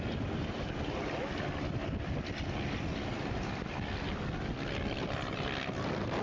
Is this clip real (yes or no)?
yes